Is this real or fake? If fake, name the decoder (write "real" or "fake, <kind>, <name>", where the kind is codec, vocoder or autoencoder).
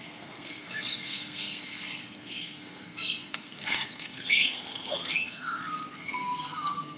fake, codec, SNAC